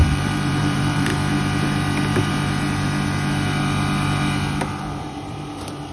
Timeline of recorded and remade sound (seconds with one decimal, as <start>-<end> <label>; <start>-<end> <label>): 0.0-1.1 remade; 1.1-4.6 recorded; 4.6-5.9 remade

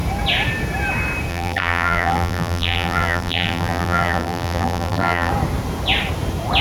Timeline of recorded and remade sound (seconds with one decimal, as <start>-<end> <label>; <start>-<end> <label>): 0.0-1.3 recorded; 1.3-5.3 remade; 5.3-6.6 recorded

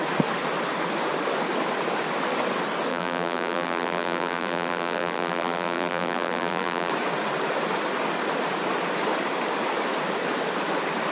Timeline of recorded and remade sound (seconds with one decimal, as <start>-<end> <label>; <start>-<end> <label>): 0.0-2.9 recorded; 2.9-6.9 remade; 6.9-11.1 recorded

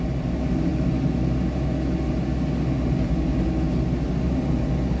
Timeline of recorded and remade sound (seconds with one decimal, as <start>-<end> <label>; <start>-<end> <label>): 0.0-5.0 recorded